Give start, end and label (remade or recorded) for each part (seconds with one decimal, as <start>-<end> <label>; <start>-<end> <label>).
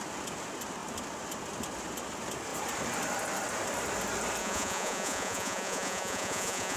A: 0.0-4.4 recorded; 4.4-6.8 remade